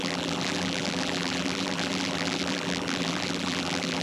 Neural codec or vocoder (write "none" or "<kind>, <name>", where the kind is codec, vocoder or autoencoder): vocoder, BigVGAN v2